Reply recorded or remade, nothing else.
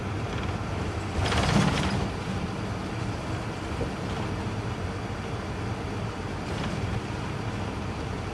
remade